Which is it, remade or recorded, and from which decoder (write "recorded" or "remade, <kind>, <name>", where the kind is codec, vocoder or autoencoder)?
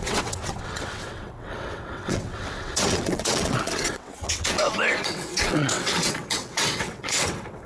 remade, vocoder, WaveNeXt